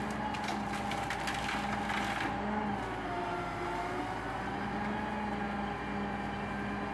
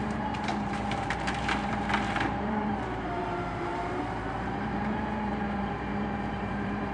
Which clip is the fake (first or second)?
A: second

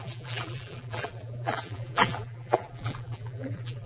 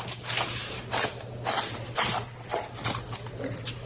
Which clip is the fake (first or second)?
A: first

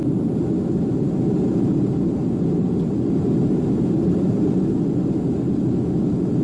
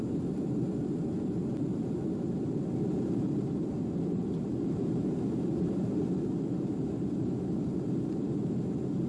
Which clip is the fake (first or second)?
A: second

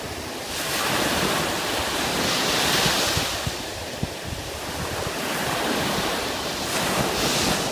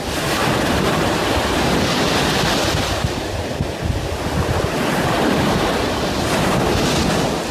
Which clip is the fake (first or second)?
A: first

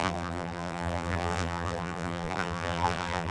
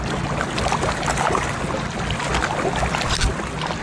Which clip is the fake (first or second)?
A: first